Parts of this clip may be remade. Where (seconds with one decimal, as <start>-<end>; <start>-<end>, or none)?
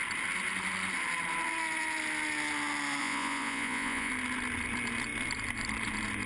3.0-4.1